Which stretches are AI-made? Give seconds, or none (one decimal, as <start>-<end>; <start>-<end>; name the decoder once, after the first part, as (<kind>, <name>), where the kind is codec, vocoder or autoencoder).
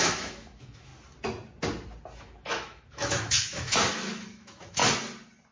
0.0-0.9 (autoencoder, DAC-VAE); 2.2-4.8